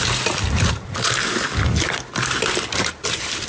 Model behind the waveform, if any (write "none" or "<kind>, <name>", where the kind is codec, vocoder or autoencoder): none